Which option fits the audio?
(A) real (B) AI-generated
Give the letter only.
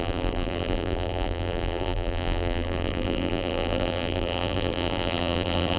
B